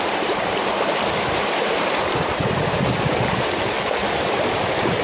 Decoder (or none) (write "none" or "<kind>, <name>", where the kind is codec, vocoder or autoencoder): vocoder, BigVGAN v2